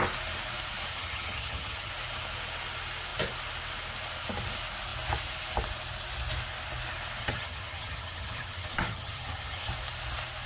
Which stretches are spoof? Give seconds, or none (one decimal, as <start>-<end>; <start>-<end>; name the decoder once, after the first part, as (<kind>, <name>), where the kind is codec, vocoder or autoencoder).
0.9-1.9 (vocoder, HiFi-GAN); 7.2-9.7